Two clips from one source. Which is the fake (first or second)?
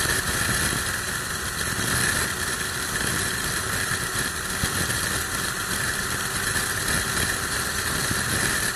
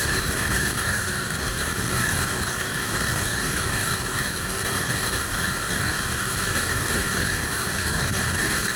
second